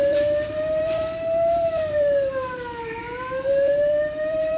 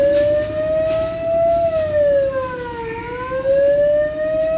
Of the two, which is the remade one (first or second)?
first